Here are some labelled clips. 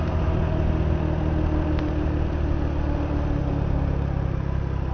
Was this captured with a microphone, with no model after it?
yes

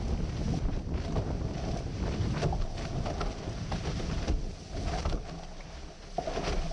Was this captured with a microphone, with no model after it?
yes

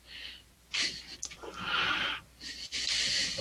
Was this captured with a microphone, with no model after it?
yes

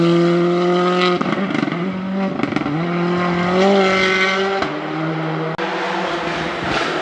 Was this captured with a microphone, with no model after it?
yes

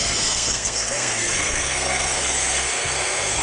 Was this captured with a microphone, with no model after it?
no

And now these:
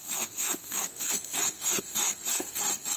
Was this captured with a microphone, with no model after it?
no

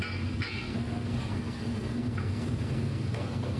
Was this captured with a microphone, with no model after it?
no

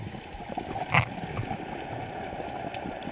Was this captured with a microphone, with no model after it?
yes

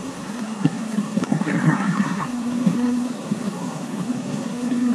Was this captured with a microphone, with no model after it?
no